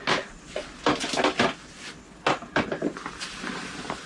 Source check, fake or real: real